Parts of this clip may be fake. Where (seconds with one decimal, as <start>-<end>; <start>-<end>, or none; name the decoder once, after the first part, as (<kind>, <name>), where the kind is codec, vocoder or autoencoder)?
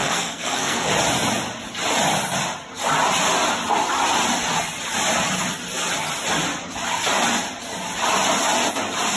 0.0-0.9 (codec, SNAC)